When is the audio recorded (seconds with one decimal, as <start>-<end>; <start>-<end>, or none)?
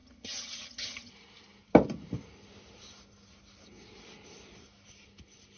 1.1-5.6